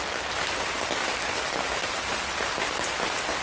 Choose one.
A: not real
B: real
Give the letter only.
B